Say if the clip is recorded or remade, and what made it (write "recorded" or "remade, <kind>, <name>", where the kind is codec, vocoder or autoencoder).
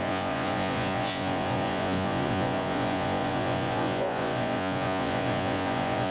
remade, vocoder, Vocos